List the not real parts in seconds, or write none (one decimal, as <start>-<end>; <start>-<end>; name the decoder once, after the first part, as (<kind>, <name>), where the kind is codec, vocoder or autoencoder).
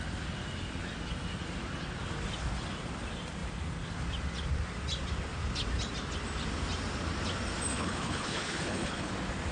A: 7.7-9.1 (codec, HILCodec)